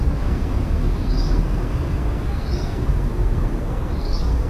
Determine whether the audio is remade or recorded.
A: remade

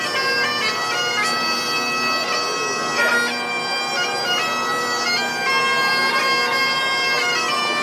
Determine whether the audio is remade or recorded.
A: recorded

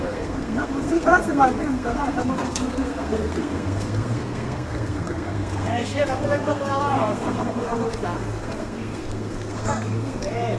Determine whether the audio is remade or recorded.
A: remade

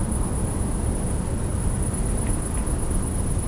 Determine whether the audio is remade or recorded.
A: recorded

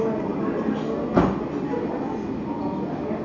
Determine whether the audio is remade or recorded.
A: recorded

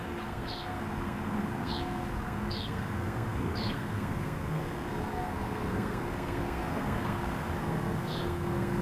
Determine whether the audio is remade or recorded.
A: remade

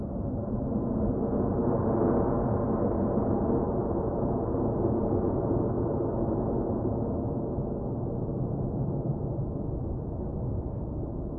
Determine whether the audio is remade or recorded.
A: recorded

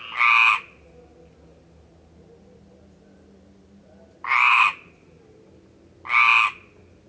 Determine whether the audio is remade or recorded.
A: recorded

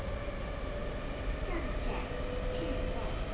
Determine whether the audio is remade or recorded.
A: recorded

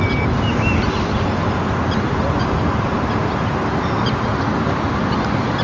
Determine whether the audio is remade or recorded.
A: recorded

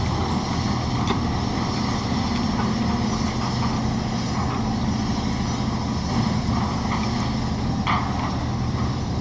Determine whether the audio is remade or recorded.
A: recorded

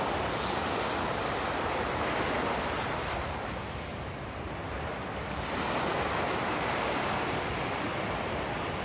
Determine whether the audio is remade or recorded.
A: recorded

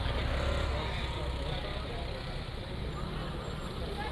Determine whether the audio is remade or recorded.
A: recorded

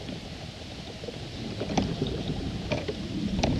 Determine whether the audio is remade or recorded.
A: remade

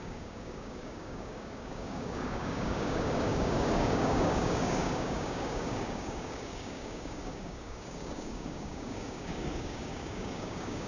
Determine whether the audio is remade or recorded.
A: remade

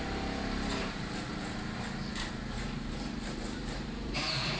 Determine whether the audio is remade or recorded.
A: remade